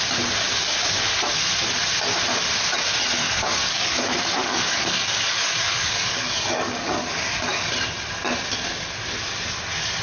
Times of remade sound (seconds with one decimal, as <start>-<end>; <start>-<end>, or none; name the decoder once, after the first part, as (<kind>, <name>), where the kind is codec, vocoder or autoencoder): 3.2-7.7 (codec, DAC)